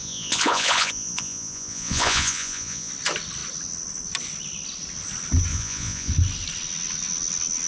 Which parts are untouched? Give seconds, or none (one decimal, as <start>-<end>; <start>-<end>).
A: 2.9-5.5; 6.1-7.7

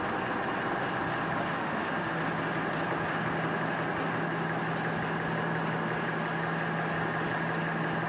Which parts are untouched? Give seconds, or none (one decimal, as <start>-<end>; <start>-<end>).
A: 0.0-1.6; 2.2-8.1